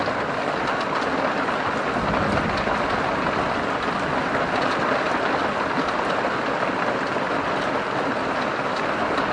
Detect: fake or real real